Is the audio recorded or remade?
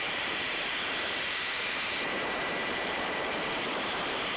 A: remade